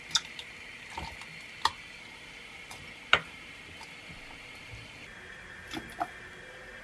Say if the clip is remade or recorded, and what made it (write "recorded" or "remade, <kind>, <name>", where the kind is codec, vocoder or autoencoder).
recorded